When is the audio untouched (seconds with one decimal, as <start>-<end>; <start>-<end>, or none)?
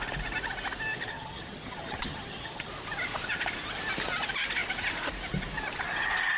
0.0-1.1; 2.7-6.4